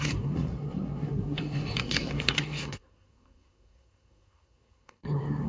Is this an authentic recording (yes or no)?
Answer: no